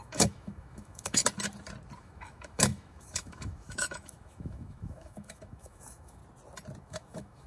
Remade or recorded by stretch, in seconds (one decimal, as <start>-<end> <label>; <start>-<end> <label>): 0.0-1.2 remade; 1.2-2.0 recorded; 2.0-6.2 remade; 6.2-6.8 recorded; 6.8-7.5 remade